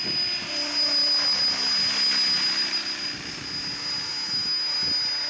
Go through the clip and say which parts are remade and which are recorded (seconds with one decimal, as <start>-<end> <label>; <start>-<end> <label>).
0.0-4.1 recorded; 4.1-4.7 remade; 4.7-5.3 recorded